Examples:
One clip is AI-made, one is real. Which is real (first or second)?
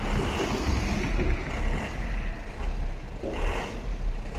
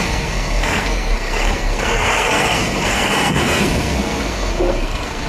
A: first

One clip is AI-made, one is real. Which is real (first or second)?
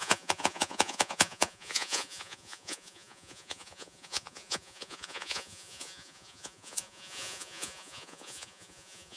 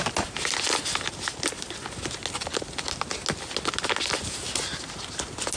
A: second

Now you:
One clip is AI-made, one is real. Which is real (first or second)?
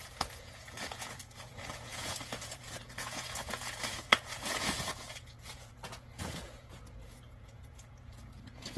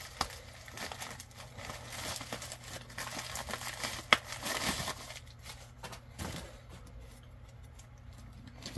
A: second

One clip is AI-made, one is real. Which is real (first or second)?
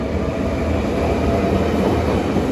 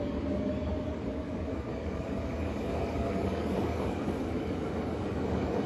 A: first